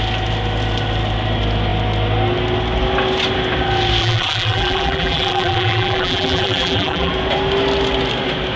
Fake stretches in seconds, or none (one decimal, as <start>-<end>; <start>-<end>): 4.0-7.1